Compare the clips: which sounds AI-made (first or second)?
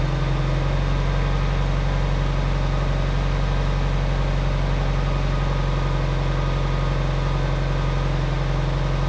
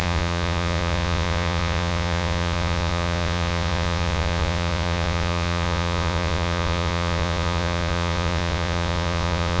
second